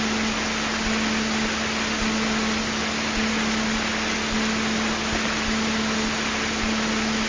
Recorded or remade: recorded